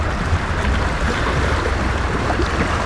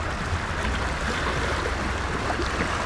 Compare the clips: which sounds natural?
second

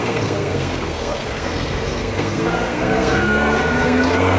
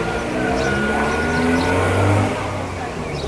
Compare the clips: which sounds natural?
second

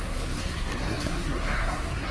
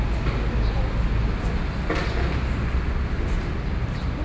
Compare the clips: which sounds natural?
second